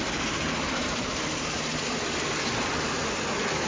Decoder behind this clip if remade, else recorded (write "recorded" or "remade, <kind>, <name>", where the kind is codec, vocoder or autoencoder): recorded